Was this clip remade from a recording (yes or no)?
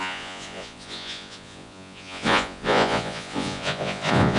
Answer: yes